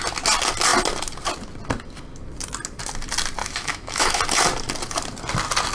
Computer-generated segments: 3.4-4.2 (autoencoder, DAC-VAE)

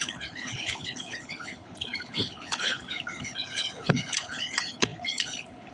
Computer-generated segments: 0.0-5.7 (codec, HILCodec)

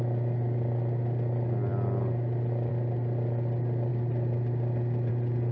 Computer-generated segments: none

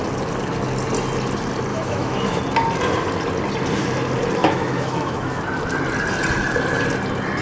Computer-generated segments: 1.7-2.4 (autoencoder, DAC-VAE); 4.4-5.4

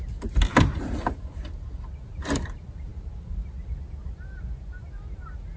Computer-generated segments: none

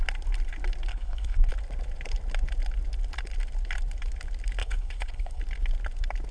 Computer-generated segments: 0.9-1.5 (codec, HILCodec); 4.6-5.4

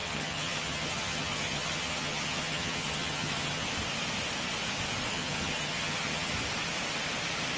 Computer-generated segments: 0.0-3.6 (vocoder, HiFi-GAN); 5.1-6.3

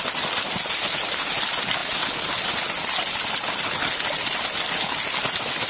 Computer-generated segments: none